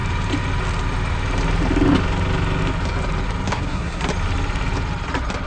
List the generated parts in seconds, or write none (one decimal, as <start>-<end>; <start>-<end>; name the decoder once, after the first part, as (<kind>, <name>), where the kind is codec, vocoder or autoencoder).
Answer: 3.5-4.0 (codec, SNAC)